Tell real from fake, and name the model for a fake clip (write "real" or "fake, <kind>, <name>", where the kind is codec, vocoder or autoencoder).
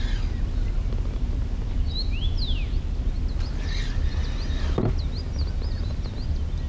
real